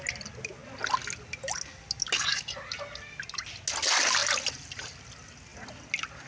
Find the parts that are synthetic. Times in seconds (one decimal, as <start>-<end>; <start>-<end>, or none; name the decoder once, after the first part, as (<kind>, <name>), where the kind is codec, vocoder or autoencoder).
none

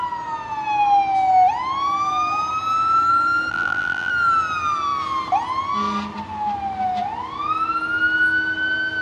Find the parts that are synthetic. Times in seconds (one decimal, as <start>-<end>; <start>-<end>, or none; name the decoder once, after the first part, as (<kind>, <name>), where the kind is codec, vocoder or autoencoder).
3.5-4.1 (vocoder, BigVGAN v2)

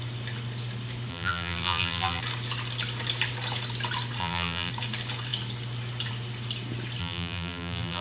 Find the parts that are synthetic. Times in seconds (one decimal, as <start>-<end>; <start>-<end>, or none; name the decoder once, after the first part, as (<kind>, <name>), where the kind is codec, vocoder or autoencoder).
1.1-2.2 (vocoder, BigVGAN v2); 4.2-4.7; 7.0-8.0

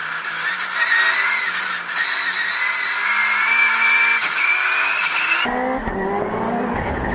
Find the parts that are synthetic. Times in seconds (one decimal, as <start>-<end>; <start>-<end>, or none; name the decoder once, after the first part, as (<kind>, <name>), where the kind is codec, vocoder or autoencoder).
none

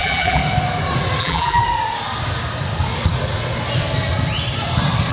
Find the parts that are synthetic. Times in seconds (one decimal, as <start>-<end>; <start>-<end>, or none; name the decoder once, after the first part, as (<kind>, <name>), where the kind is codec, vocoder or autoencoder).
0.0-0.4 (vocoder, BigVGAN v2); 1.2-1.6